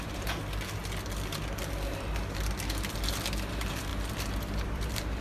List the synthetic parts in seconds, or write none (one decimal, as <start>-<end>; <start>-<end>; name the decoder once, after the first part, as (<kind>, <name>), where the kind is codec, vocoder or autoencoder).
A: 0.0-0.4 (vocoder, BigVGAN v2); 3.5-3.9; 4.6-5.2